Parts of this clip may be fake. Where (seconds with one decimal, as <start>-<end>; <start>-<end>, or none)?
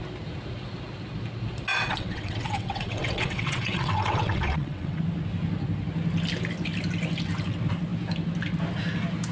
1.7-5.0